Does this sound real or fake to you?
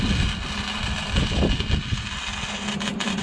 real